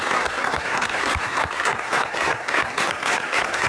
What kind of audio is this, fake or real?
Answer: fake